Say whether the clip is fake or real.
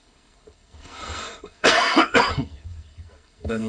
fake